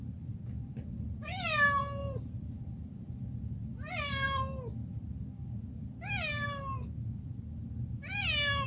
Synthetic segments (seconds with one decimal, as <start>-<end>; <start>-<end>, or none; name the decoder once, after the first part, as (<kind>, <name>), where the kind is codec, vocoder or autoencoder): 2.0-3.5 (vocoder, BigVGAN v2)